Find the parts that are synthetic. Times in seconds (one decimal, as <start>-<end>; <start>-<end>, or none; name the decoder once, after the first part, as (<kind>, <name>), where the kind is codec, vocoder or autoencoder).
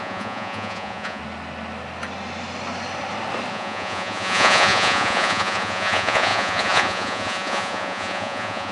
0.0-1.2 (vocoder, Vocos); 3.5-8.7